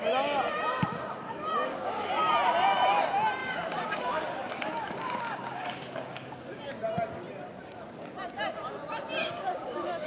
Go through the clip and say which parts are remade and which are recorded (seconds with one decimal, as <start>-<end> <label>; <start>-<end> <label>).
0.0-1.1 recorded; 1.1-2.1 remade; 2.1-3.4 recorded; 3.4-6.6 remade; 6.6-7.6 recorded; 7.6-8.1 remade; 8.1-9.2 recorded; 9.2-10.1 remade